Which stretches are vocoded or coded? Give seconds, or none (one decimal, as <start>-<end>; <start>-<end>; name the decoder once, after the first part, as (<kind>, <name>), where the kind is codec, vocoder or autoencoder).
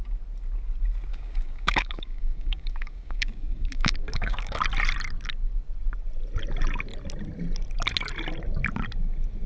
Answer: 1.1-4.6 (codec, DAC)